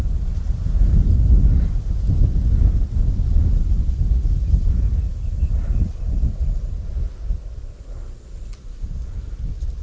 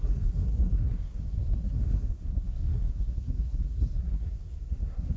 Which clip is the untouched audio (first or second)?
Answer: first